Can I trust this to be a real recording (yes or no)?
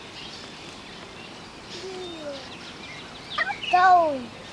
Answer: yes